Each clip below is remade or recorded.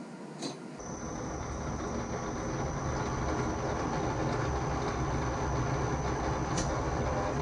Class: recorded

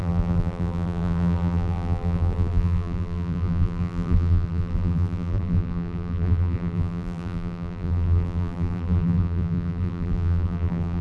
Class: remade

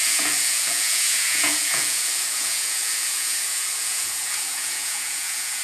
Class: remade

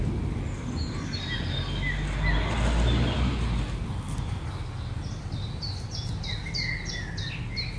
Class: recorded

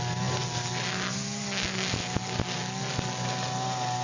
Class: recorded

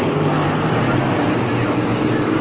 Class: remade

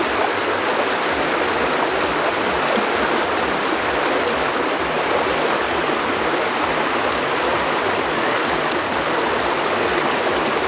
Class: recorded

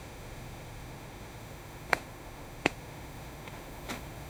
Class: remade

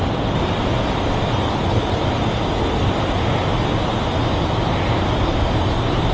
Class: recorded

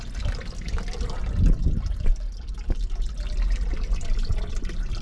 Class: recorded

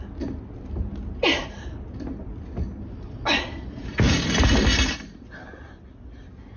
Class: recorded